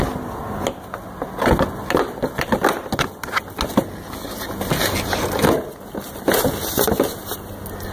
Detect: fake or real real